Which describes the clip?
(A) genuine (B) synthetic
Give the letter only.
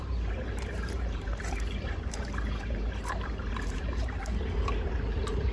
B